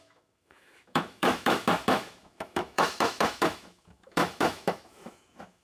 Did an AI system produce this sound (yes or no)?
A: yes